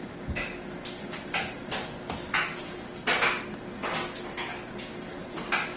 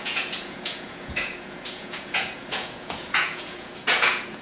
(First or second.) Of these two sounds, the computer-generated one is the second